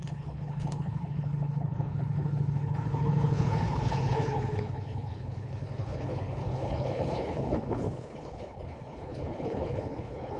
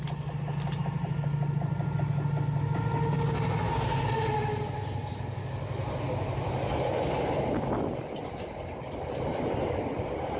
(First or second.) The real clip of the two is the second